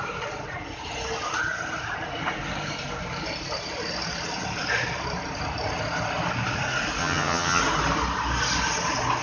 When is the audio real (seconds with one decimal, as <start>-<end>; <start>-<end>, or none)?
0.0-7.0; 7.6-9.2